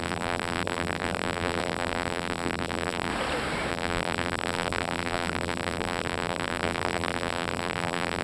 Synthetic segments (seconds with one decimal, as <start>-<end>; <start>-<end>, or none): 0.0-3.1; 3.7-8.2